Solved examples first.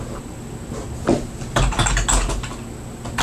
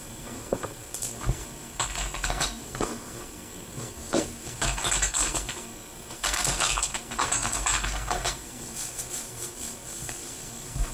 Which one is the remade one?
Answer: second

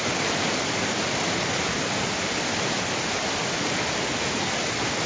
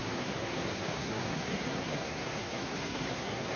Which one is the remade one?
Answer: second